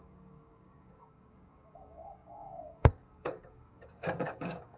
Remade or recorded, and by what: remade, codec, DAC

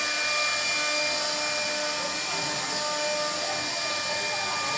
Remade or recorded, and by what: recorded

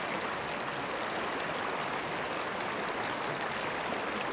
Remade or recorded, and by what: recorded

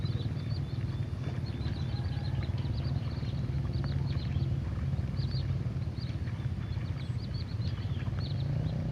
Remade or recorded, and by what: recorded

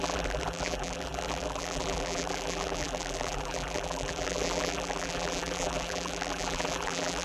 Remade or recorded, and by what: remade, vocoder, BigVGAN v2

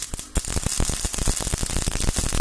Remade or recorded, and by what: recorded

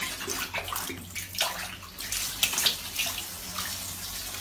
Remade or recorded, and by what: recorded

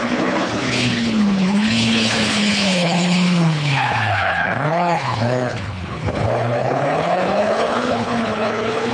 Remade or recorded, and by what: remade, codec, HILCodec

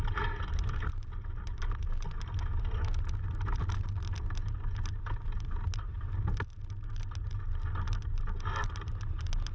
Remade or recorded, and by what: recorded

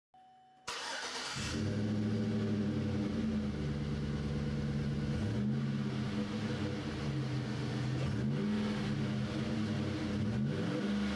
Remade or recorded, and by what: recorded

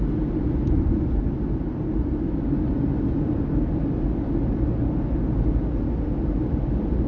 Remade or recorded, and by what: recorded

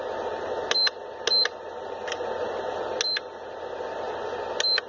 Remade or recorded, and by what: recorded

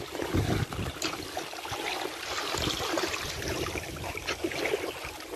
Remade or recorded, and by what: recorded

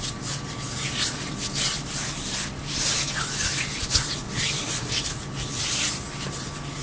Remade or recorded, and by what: recorded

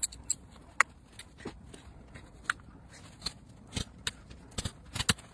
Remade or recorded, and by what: recorded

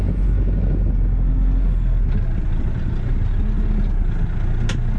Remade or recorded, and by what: recorded